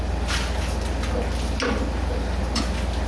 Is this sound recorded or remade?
recorded